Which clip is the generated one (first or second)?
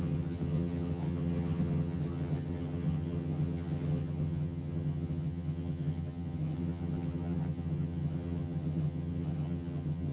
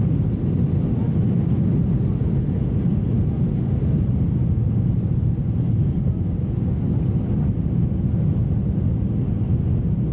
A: first